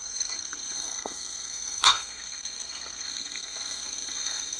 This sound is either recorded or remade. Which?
remade